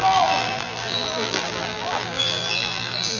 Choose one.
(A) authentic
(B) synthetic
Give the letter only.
B